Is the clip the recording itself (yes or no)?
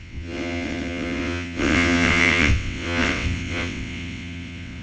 no